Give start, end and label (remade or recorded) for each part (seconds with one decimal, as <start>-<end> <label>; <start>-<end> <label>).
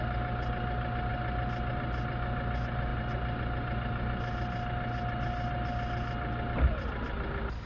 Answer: 0.0-7.7 recorded